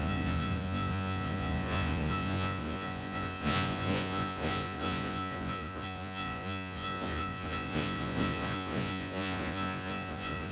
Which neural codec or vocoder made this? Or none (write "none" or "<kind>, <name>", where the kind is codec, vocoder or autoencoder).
vocoder, Vocos